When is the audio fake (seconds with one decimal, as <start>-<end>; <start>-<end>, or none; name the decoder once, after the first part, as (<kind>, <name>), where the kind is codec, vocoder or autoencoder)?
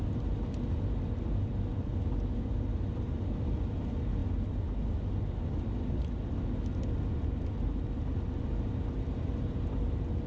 none